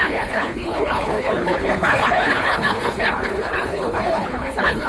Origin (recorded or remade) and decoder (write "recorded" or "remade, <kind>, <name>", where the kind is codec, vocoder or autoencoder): remade, codec, HILCodec